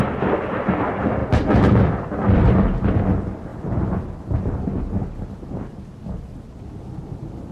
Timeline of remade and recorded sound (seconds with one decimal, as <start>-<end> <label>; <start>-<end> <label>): 0.0-7.5 recorded